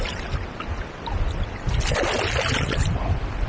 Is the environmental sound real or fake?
real